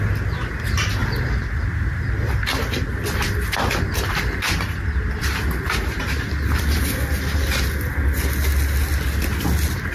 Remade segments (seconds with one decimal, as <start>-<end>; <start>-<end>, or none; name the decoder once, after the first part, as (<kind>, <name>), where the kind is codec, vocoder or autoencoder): none